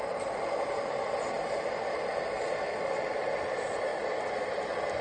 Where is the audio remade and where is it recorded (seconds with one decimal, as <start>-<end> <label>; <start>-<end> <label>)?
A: 0.0-5.0 recorded